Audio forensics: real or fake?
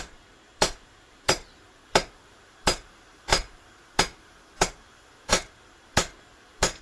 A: fake